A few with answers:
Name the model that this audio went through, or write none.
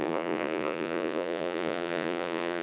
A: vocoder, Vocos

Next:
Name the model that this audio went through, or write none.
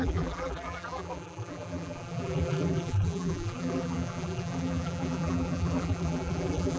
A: vocoder, BigVGAN v2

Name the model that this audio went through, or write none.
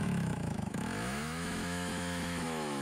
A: autoencoder, DAC-VAE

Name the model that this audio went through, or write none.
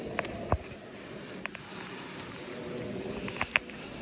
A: none